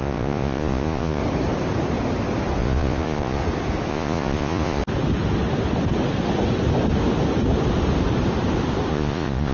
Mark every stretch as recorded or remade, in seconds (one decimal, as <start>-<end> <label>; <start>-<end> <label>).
0.0-1.2 remade; 1.2-2.6 recorded; 2.6-3.4 remade; 3.4-3.9 recorded; 3.9-4.8 remade; 4.8-8.9 recorded; 8.9-9.5 remade